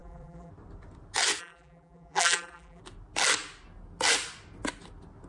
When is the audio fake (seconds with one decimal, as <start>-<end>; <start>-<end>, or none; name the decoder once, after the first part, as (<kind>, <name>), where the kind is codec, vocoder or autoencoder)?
0.0-0.5 (vocoder, BigVGAN v2); 1.4-2.8

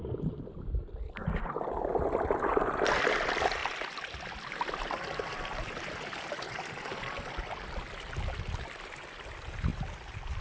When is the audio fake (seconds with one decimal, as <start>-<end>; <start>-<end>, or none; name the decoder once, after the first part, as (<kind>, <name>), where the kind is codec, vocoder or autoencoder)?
none

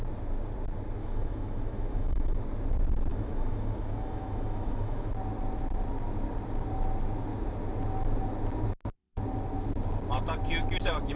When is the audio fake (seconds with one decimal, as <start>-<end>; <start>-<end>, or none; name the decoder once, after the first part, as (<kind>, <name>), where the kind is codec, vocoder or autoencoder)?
1.0-2.4 (autoencoder, DAC-VAE); 3.1-5.1

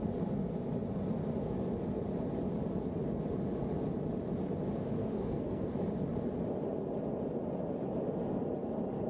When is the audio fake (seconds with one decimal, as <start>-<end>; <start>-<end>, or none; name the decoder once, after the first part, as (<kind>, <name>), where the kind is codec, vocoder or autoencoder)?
5.0-5.7 (codec, SNAC)

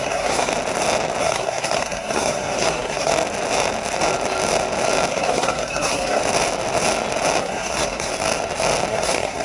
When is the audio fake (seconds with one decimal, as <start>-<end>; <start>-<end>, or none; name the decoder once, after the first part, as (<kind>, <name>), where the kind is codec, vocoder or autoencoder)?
0.0-0.5 (codec, SNAC); 1.2-3.1; 5.1-6.2; 7.4-8.1; 8.9-9.4